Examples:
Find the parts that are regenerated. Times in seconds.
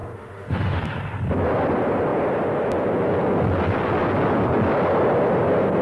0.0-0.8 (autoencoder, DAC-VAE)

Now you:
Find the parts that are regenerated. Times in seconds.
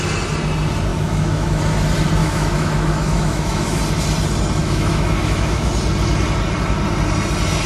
0.9-1.6 (autoencoder, DAC-VAE); 2.2-3.8; 4.6-5.7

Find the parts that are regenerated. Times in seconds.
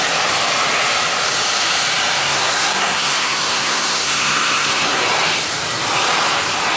2.2-5.0 (codec, SNAC)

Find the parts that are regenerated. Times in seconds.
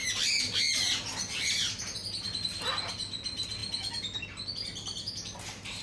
2.9-3.6 (vocoder, BigVGAN v2); 4.2-5.8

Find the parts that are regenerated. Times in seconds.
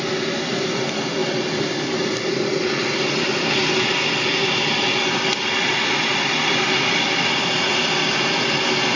none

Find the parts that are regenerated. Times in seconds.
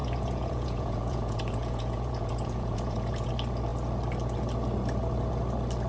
0.0-3.3 (vocoder, Vocos)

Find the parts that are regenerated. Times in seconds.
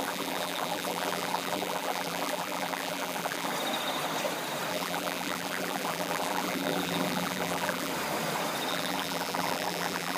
0.0-3.5 (vocoder, BigVGAN v2); 4.7-7.9; 8.7-10.2